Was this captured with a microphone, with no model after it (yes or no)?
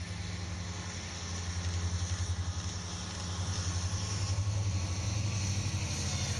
yes